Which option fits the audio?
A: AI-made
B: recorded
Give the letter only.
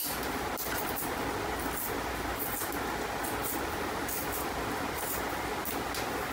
B